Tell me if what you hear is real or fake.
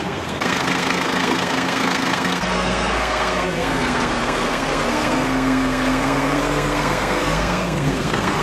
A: fake